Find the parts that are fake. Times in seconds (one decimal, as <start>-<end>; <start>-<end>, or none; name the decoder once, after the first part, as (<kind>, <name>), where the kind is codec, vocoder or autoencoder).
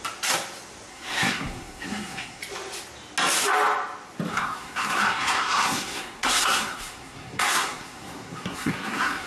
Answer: 0.9-2.4 (codec, SNAC); 4.3-9.3